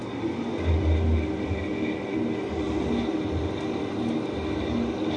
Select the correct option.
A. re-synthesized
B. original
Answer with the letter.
B